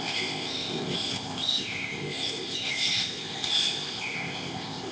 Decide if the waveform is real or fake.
fake